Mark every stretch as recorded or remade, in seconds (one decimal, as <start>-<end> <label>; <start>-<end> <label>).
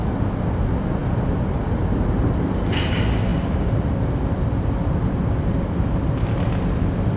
0.0-7.2 recorded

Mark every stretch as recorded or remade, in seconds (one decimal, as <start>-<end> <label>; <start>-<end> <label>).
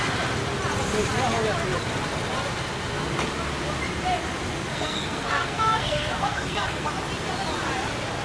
0.0-4.7 recorded; 4.7-6.9 remade; 6.9-8.2 recorded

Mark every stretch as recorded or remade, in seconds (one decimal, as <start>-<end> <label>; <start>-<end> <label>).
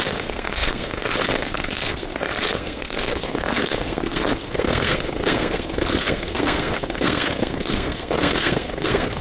0.0-9.2 remade